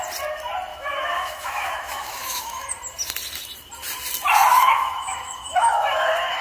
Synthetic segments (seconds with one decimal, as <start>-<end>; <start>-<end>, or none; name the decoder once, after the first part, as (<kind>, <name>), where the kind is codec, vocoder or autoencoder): 0.7-2.7 (autoencoder, DAC-VAE); 4.5-6.4